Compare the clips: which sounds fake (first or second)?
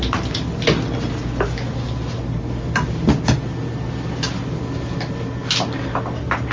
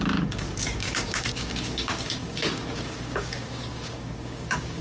second